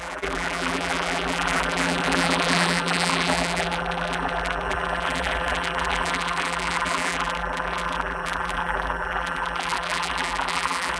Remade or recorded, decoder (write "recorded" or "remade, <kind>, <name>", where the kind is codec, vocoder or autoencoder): remade, vocoder, BigVGAN v2